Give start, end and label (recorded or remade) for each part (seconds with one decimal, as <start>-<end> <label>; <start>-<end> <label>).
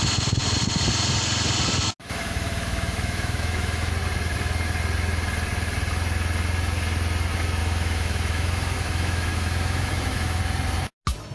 0.0-2.0 recorded; 2.0-3.9 remade; 3.9-7.6 recorded; 7.6-10.4 remade; 10.4-11.3 recorded